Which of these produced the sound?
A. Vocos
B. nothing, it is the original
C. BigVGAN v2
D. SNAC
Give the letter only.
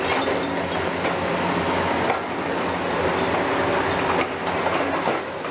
B